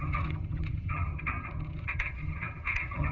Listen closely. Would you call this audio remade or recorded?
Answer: remade